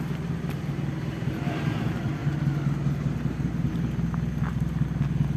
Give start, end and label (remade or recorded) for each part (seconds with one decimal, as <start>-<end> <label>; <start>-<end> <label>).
0.0-2.2 remade; 2.2-5.4 recorded

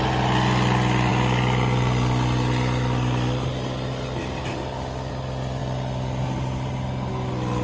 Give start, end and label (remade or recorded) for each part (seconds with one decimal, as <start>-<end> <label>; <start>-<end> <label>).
0.0-7.6 recorded

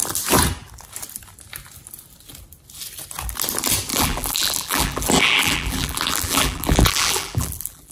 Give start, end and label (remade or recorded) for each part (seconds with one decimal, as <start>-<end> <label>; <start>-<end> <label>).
0.0-3.9 recorded; 3.9-7.9 remade

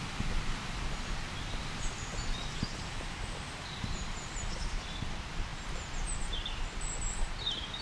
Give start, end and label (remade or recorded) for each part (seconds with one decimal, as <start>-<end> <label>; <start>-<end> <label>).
0.0-7.8 recorded

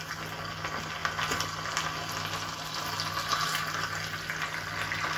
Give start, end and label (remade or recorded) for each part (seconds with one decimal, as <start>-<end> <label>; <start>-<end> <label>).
0.0-5.2 recorded